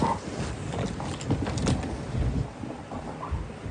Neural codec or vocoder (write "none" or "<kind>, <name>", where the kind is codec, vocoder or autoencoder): none